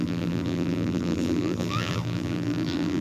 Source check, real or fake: fake